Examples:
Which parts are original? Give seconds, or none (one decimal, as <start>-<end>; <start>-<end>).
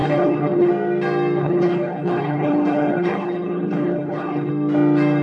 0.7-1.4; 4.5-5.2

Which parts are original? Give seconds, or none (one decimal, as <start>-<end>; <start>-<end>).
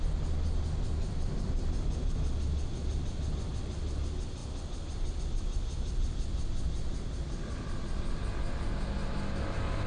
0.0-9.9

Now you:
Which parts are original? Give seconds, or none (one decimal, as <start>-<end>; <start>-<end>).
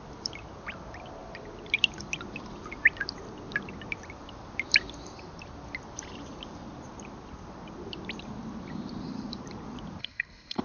0.0-10.0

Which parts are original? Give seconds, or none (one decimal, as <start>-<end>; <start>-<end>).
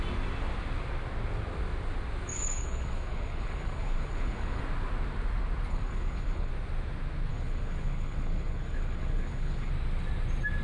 0.0-2.3; 4.6-5.7; 6.5-7.3; 9.7-10.6